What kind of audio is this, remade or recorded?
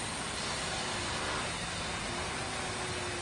recorded